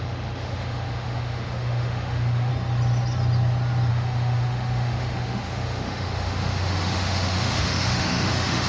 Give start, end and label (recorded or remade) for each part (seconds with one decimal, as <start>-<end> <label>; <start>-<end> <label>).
0.0-2.5 remade; 2.5-3.9 recorded; 3.9-8.7 remade